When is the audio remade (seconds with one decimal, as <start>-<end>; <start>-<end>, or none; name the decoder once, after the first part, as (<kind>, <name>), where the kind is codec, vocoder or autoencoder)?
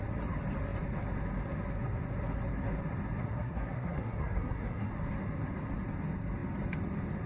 3.2-4.9 (codec, SNAC)